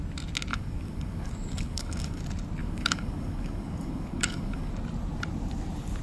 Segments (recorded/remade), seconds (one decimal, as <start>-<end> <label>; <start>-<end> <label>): 0.0-0.5 recorded; 0.5-2.2 remade; 2.2-2.6 recorded; 2.6-4.7 remade; 4.7-6.0 recorded